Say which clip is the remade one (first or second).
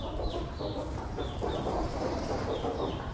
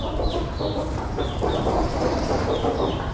first